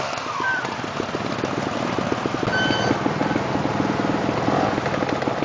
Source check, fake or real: real